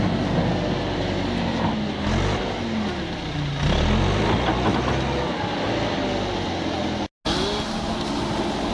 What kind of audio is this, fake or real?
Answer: real